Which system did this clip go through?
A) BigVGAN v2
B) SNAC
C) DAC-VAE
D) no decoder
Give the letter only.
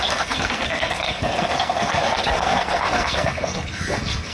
B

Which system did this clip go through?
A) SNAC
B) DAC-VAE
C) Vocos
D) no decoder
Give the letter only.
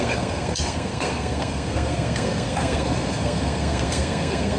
A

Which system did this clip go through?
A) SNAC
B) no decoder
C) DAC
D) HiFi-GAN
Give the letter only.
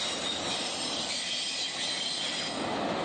B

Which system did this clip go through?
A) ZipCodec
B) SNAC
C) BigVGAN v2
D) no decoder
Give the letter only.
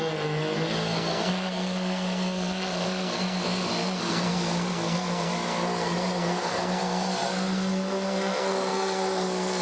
B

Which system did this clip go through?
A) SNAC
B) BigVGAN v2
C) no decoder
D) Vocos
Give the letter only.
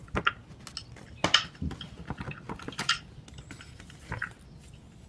C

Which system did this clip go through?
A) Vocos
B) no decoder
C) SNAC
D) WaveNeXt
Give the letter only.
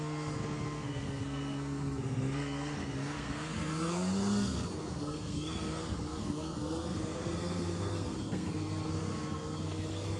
C